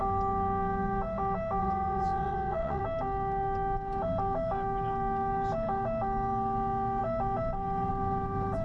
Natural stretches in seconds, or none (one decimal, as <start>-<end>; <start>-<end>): 0.0-1.6; 2.8-8.6